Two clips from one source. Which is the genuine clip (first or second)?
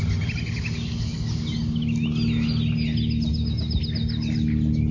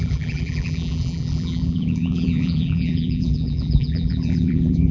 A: first